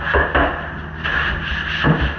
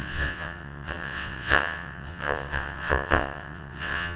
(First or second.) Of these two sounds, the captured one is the first